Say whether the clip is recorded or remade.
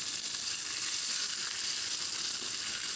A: recorded